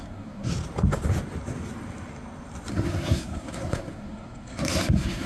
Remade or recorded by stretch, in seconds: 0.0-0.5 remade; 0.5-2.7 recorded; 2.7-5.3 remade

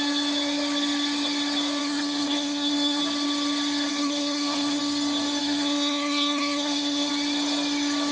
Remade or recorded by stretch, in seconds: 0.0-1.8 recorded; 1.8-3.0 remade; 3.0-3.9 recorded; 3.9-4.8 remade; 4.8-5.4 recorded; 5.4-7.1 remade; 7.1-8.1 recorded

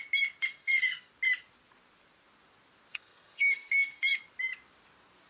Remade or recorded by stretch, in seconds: 0.0-0.6 recorded; 0.6-1.1 remade; 1.1-2.9 recorded; 2.9-4.1 remade; 4.1-5.3 recorded